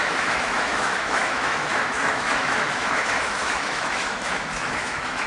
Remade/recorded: remade